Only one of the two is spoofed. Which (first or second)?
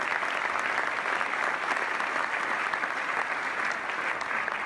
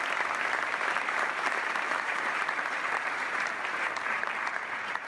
second